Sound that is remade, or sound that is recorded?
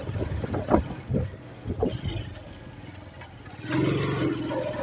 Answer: recorded